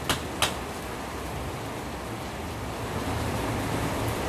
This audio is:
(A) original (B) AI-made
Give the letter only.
A